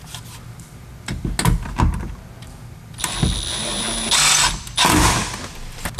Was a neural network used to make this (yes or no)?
no